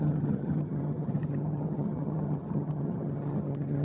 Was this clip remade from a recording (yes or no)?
yes